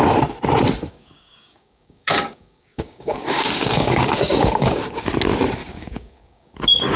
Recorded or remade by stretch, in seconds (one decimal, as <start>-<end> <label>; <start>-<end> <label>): 0.0-0.9 recorded; 0.9-5.1 remade; 5.1-5.6 recorded; 5.6-7.0 remade